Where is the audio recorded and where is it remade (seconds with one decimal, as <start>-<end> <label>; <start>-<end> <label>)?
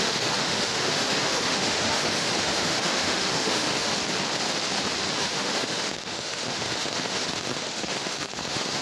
0.0-3.9 remade; 3.9-5.2 recorded; 5.2-8.8 remade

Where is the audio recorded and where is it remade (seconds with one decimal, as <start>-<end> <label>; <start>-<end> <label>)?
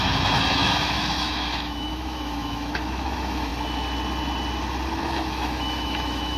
0.0-3.5 remade; 3.5-5.0 recorded; 5.0-6.4 remade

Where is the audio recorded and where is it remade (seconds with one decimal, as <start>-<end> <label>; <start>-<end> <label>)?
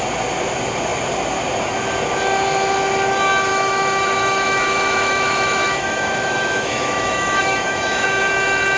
0.0-3.5 recorded; 3.5-8.3 remade; 8.3-8.8 recorded